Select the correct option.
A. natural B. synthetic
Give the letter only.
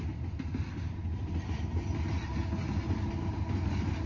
A